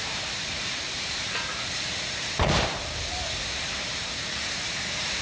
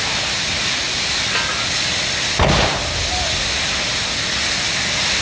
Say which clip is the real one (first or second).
second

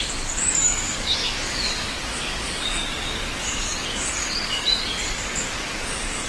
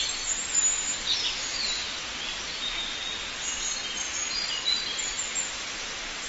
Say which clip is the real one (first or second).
second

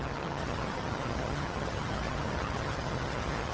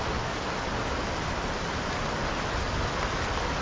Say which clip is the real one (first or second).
second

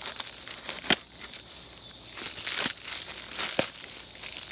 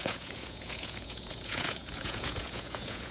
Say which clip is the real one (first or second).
first